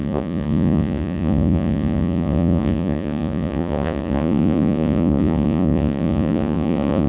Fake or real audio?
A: fake